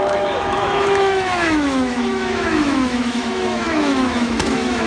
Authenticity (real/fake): fake